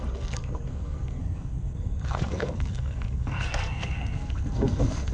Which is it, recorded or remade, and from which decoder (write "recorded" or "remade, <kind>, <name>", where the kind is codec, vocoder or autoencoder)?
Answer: remade, codec, SNAC